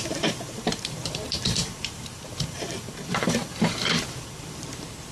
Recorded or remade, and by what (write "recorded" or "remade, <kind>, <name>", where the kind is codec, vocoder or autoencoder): remade, vocoder, BigVGAN v2